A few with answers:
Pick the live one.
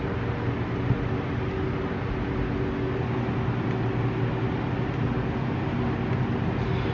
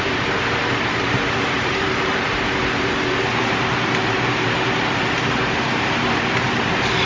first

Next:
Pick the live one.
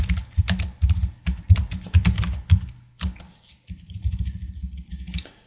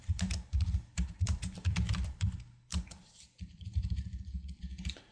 first